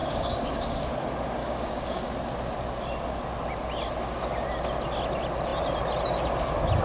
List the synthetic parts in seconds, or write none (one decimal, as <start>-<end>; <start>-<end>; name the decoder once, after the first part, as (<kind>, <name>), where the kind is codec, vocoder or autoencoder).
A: 0.0-0.9 (codec, DAC); 1.4-2.1